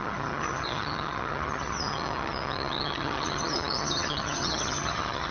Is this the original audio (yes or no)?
no